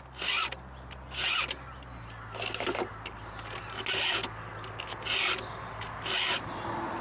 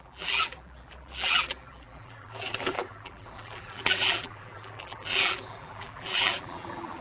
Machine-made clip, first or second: second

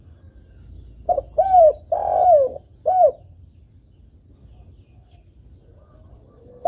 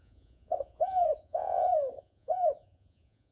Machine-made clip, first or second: second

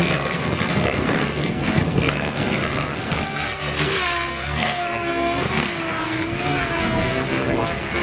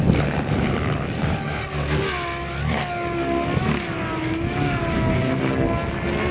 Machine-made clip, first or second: first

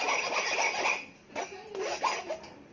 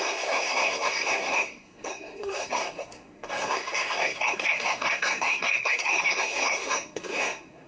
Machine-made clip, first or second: second